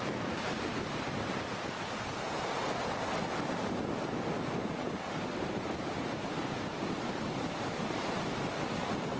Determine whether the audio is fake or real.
real